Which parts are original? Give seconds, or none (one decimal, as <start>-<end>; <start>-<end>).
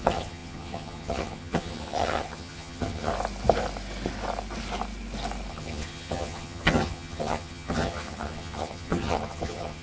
3.1-5.5